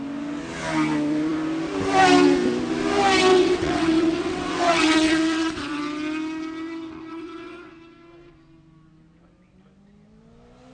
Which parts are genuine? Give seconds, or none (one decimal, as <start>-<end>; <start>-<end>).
0.0-3.3; 5.8-7.1; 7.7-10.7